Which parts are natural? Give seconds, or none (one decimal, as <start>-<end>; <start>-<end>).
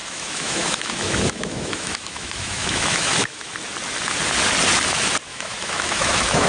3.5-5.3